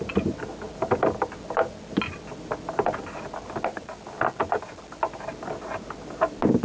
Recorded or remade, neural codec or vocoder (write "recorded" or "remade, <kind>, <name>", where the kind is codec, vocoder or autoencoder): recorded